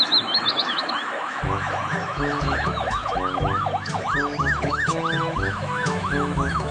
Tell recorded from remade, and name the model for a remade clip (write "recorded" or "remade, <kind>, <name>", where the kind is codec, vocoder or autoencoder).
remade, autoencoder, DAC-VAE